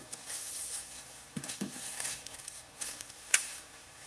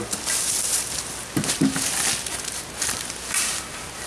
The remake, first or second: first